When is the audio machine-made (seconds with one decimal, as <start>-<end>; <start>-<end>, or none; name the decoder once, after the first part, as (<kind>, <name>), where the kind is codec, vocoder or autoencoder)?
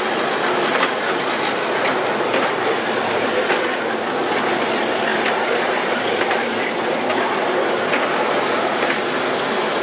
none